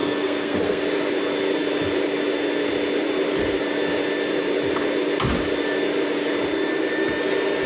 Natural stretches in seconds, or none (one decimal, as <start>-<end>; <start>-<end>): 0.8-7.7